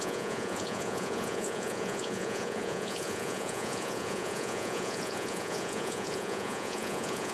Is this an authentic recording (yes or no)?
no